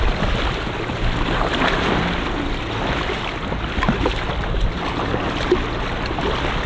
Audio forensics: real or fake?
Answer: real